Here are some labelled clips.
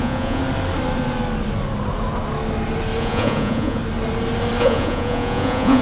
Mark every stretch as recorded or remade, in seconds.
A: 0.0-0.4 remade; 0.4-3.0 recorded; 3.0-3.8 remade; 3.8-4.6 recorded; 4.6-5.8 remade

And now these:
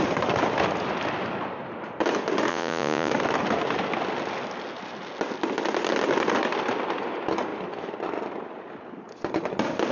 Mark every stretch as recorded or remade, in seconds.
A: 0.0-2.5 recorded; 2.5-3.1 remade; 3.1-9.9 recorded

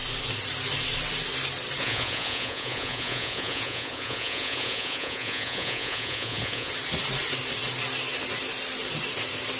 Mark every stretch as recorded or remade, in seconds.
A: 0.0-1.8 recorded; 1.8-6.7 remade; 6.7-9.6 recorded

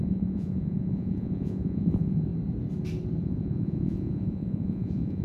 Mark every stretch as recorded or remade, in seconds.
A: 0.0-2.3 remade; 2.3-3.2 recorded; 3.2-5.2 remade

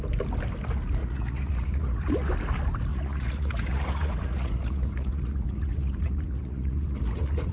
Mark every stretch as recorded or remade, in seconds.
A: 0.0-1.0 recorded; 1.0-2.3 remade; 2.3-2.9 recorded; 2.9-7.5 remade

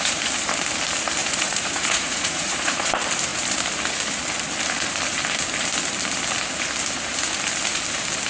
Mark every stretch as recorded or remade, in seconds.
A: 0.0-1.2 recorded; 1.2-2.9 remade; 2.9-8.3 recorded

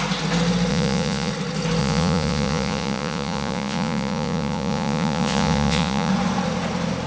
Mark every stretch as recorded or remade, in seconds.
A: 0.0-0.7 recorded; 0.7-1.3 remade; 1.3-1.8 recorded; 1.8-6.1 remade; 6.1-7.1 recorded

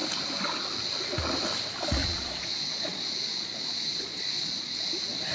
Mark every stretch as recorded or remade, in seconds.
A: 0.0-2.0 recorded; 2.0-4.7 remade; 4.7-5.3 recorded